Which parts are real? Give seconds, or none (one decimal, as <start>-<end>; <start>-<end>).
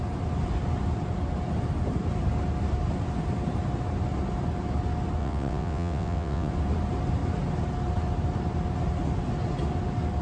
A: 0.0-5.2; 6.5-10.2